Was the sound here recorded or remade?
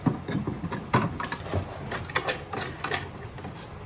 recorded